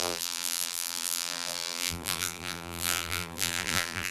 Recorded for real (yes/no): no